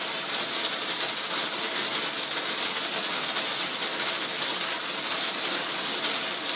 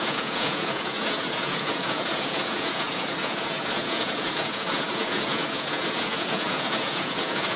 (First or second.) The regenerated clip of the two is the second